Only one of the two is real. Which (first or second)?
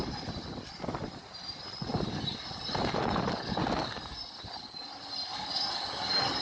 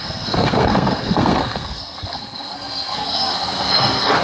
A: first